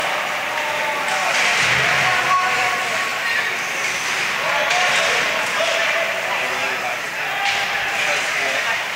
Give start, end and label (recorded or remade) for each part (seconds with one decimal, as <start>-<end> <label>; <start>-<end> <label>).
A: 0.0-9.0 recorded